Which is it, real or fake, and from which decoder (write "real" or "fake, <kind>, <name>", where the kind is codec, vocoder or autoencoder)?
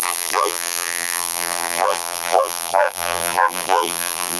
fake, vocoder, BigVGAN v2